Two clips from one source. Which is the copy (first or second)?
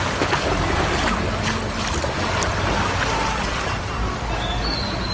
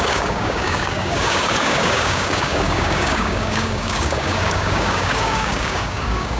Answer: second